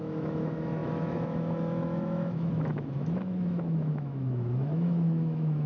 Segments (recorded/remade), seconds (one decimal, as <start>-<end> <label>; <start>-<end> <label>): 0.0-5.7 remade